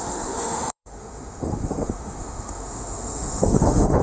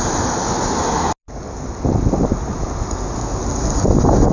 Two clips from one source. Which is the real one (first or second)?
second